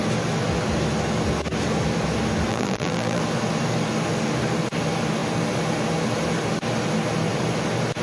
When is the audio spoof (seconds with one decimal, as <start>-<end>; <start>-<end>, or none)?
2.5-3.2